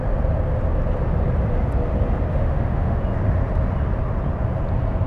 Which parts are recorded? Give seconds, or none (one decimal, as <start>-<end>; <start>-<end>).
0.0-2.3; 3.0-5.1